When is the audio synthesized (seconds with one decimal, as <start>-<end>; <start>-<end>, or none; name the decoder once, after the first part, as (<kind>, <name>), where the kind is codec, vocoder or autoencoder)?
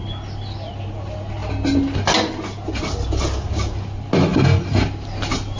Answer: none